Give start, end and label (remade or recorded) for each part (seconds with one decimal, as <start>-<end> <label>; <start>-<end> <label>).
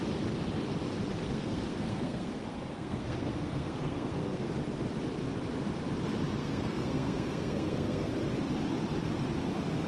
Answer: 0.0-1.2 recorded; 1.2-4.5 remade; 4.5-6.4 recorded; 6.4-8.1 remade; 8.1-9.9 recorded